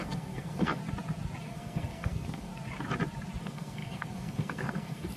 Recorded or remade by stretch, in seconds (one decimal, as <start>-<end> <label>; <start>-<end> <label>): 0.0-0.8 remade; 0.8-1.4 recorded; 1.4-2.5 remade; 2.5-3.4 recorded; 3.4-5.2 remade